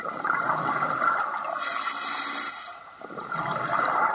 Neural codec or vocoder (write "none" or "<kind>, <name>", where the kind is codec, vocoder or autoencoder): none